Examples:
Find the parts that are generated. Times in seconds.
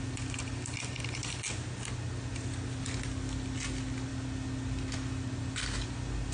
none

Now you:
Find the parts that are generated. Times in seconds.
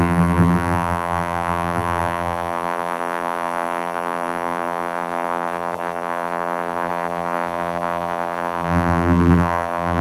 0.0-10.0 (vocoder, BigVGAN v2)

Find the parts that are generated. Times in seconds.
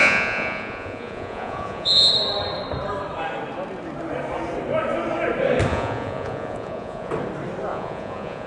0.0-2.1 (vocoder, Vocos); 5.7-7.1; 7.7-8.5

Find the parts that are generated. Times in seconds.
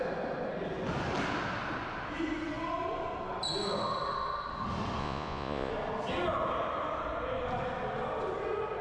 5.0-5.7 (vocoder, Vocos)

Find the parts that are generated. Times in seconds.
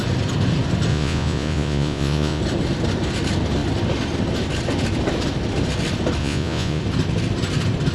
0.9-2.4 (vocoder, Vocos); 6.2-6.8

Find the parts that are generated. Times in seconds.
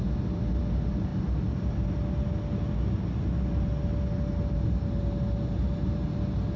none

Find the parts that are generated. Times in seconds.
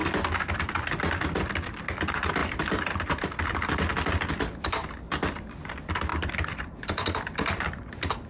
2.4-3.4 (vocoder, BigVGAN v2); 6.1-7.8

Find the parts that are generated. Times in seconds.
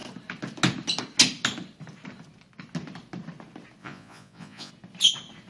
3.8-4.7 (vocoder, Vocos)